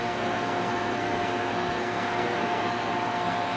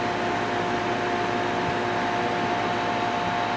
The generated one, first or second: first